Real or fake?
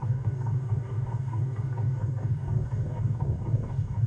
fake